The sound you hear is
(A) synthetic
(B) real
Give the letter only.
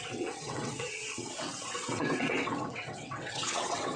A